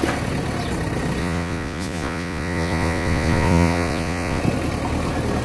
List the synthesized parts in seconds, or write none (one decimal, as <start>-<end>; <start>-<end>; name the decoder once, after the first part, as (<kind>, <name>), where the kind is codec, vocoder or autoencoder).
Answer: 1.2-4.4 (vocoder, Vocos)